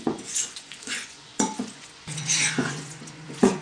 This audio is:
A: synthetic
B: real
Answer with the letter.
A